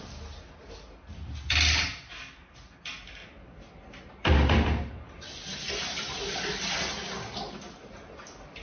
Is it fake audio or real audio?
real